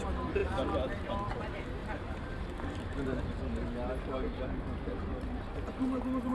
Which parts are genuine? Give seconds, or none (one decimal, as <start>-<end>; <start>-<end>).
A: 0.0-1.8; 3.2-5.1